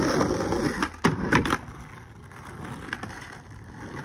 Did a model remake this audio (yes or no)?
no